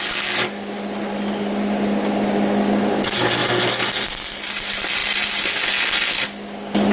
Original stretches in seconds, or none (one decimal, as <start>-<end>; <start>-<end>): 0.0-6.9